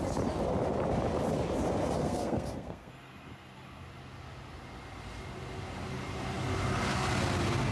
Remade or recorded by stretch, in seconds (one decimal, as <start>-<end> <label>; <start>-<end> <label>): 0.0-2.0 recorded; 2.0-2.9 remade; 2.9-7.7 recorded